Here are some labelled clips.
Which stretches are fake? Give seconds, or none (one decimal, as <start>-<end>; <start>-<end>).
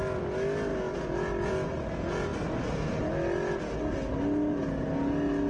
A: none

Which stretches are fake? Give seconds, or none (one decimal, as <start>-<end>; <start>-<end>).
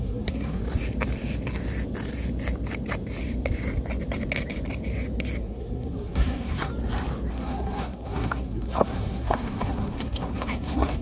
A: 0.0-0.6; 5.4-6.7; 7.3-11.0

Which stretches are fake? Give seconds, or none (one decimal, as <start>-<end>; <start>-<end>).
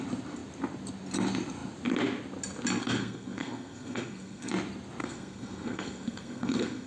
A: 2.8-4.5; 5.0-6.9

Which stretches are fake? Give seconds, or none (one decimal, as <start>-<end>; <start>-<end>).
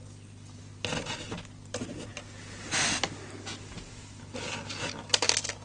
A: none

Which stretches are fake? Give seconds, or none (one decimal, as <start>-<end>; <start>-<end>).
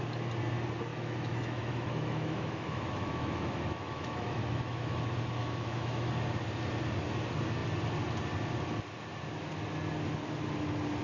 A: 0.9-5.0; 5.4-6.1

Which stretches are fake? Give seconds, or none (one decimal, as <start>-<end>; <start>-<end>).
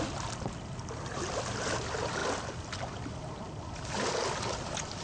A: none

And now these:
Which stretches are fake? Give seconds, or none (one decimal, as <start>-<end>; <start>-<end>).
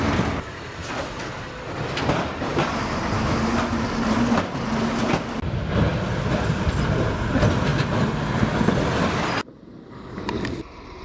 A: none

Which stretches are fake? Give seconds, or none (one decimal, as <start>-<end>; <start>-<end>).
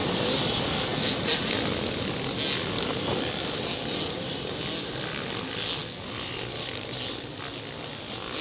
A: none